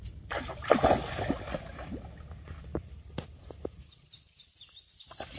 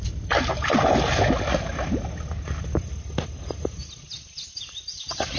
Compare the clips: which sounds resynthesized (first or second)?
first